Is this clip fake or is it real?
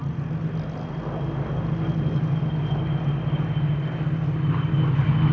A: real